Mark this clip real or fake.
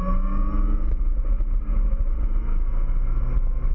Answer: real